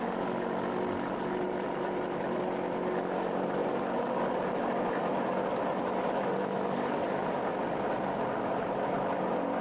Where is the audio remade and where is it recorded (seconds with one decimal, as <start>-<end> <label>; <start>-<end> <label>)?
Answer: 0.0-9.6 recorded